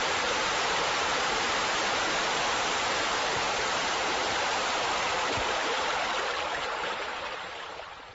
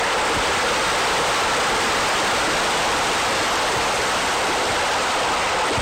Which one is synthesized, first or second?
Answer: first